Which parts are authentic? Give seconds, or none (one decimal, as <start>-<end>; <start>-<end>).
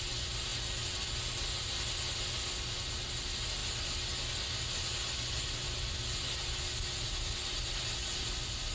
0.0-8.7